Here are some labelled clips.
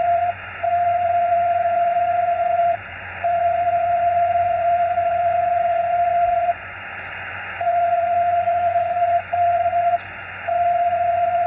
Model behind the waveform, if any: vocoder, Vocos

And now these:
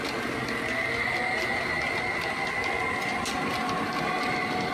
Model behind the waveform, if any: none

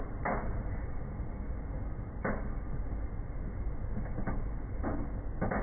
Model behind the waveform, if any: none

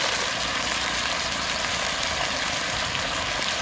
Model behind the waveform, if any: none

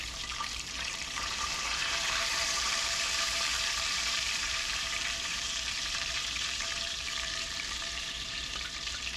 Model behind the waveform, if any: vocoder, BigVGAN v2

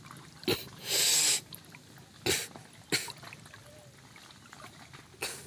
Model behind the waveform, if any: none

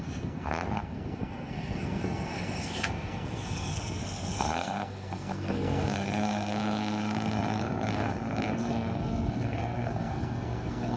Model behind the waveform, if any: codec, SNAC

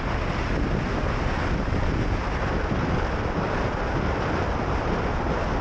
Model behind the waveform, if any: none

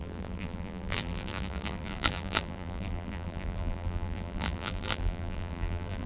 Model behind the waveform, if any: vocoder, BigVGAN v2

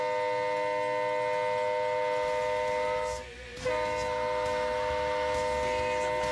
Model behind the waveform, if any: none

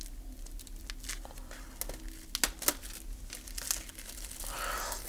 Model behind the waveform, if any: none